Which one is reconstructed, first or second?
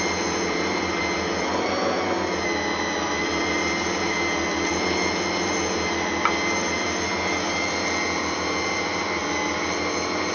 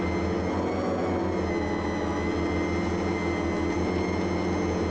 first